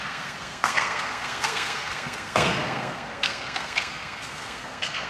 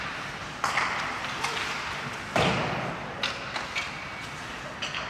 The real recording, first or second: second